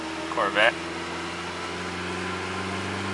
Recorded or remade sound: recorded